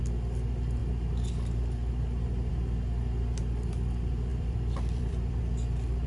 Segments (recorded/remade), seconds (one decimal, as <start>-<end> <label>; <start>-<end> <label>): 0.0-4.3 recorded; 4.3-5.4 remade; 5.4-6.1 recorded